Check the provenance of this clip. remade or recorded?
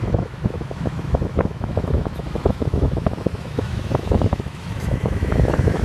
remade